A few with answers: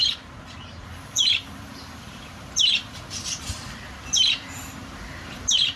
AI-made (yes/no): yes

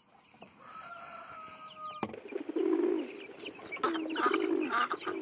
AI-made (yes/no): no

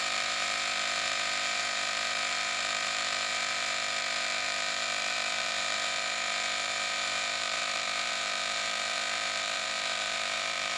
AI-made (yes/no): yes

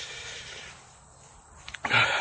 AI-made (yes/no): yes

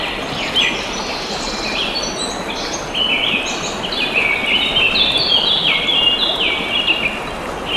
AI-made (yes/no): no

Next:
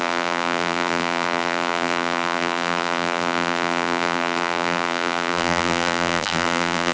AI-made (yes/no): yes